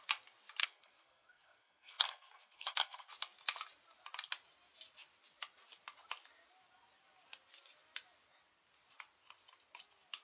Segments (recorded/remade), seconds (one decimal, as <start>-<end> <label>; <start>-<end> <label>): 0.0-0.6 recorded; 0.6-3.1 remade; 3.1-10.2 recorded